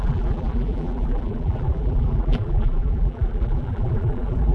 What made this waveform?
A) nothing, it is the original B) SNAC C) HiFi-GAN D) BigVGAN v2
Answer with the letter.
D